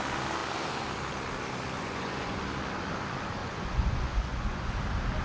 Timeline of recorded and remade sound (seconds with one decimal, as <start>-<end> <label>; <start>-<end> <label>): 0.0-1.8 recorded; 1.8-2.4 remade; 2.4-3.4 recorded; 3.4-4.7 remade; 4.7-5.2 recorded

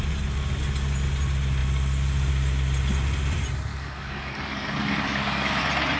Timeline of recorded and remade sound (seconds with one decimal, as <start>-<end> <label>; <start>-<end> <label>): 0.0-3.7 recorded; 3.7-5.6 remade; 5.6-6.0 recorded

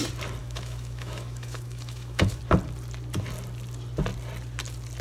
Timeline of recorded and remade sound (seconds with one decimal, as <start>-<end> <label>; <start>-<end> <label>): 0.0-0.4 recorded; 0.4-2.4 remade; 2.4-5.0 recorded

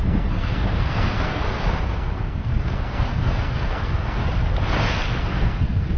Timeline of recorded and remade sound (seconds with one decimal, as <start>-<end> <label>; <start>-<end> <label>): 0.0-4.2 remade; 4.2-5.2 recorded; 5.2-6.0 remade